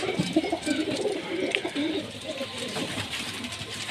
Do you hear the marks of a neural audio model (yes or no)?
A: yes